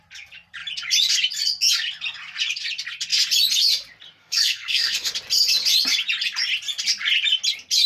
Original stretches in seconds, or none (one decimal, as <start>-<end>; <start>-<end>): 0.0-4.2; 5.1-7.9